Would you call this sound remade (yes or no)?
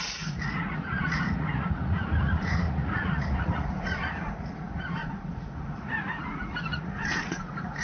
yes